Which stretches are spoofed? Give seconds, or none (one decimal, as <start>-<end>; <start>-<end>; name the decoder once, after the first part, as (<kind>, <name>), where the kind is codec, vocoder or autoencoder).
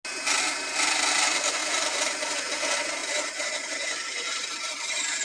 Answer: 1.6-2.4 (vocoder, BigVGAN v2); 3.0-5.2